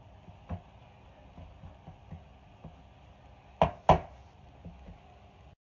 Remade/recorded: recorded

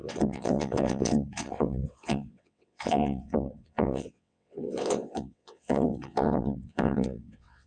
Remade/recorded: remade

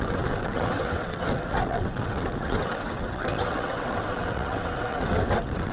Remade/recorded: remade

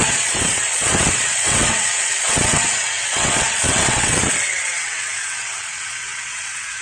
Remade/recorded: remade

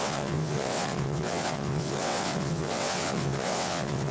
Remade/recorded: remade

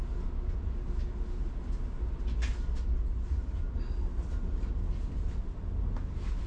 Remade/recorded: recorded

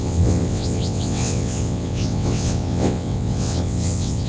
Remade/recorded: remade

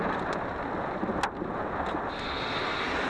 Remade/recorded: recorded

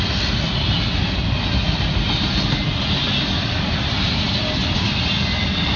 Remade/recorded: recorded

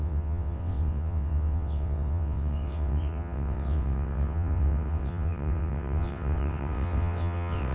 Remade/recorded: remade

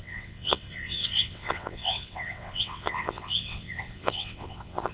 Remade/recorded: remade